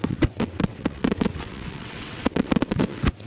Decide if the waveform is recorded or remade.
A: remade